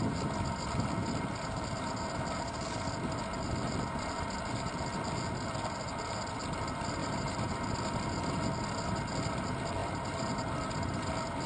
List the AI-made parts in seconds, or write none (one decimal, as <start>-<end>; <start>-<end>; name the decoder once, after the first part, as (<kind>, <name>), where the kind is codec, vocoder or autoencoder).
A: 7.0-7.5 (vocoder, BigVGAN v2)